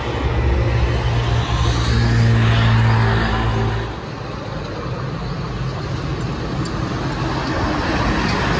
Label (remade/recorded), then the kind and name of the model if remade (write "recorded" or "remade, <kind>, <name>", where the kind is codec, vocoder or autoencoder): recorded